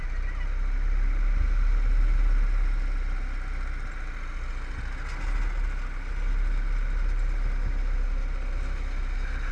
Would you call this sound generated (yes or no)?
no